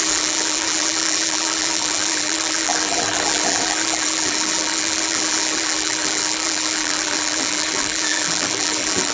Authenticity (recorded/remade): remade